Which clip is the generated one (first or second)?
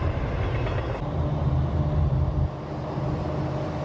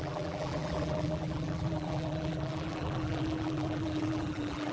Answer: second